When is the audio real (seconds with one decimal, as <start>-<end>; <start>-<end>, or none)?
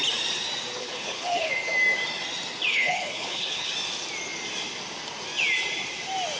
0.0-0.8; 1.5-2.7; 3.7-6.4